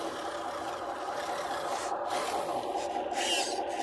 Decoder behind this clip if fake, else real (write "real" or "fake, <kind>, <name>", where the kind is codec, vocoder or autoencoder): real